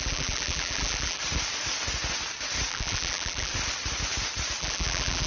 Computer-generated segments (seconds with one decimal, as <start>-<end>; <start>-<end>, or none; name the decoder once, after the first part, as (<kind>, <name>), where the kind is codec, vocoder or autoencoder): 0.0-1.2 (vocoder, BigVGAN v2); 2.7-3.5; 4.6-5.3